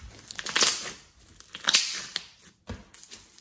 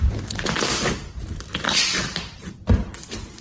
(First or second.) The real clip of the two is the first